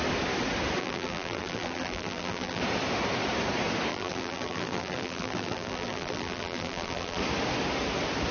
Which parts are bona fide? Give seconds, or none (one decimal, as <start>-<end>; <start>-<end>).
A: 0.0-0.8; 2.6-3.9; 7.2-8.3